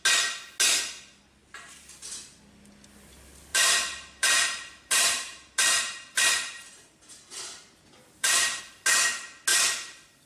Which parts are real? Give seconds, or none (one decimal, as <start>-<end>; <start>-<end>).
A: 0.0-1.4; 2.4-3.5; 8.6-10.3